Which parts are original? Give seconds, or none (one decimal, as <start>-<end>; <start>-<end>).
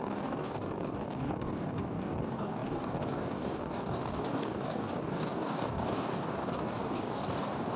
none